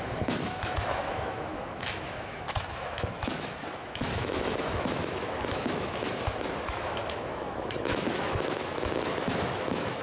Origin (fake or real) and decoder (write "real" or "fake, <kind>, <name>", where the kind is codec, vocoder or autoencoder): fake, autoencoder, DAC-VAE